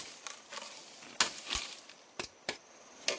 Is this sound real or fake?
real